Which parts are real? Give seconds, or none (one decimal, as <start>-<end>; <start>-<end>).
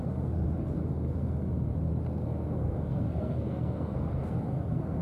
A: 1.7-2.2